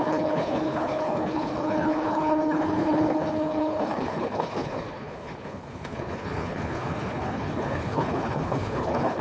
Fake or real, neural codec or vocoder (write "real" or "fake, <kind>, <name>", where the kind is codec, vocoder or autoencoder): fake, codec, HILCodec